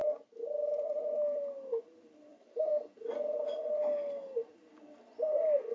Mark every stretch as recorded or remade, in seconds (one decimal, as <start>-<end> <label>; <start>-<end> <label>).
0.0-5.7 recorded